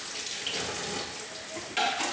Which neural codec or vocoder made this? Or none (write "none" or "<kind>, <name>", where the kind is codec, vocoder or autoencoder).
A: none